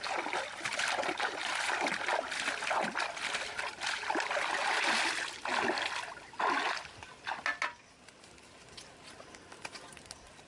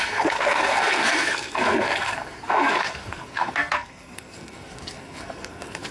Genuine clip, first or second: first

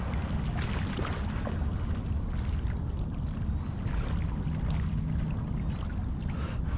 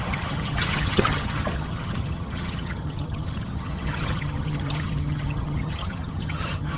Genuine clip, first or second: first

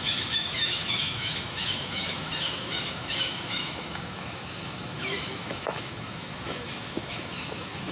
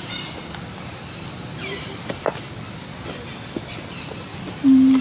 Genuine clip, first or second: second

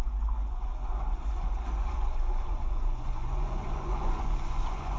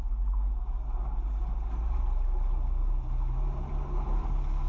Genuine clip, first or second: second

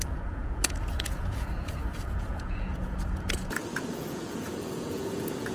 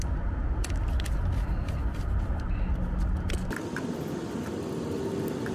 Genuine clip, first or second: second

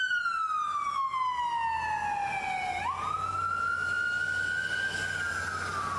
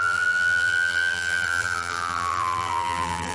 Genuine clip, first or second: first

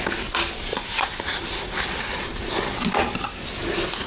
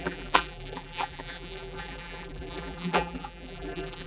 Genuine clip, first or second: first